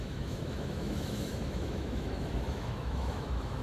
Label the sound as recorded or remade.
remade